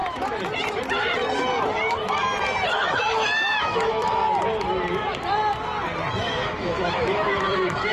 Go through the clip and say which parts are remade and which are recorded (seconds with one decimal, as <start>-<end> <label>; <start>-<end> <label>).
0.0-2.7 recorded; 2.7-4.2 remade; 4.2-6.1 recorded; 6.1-7.9 remade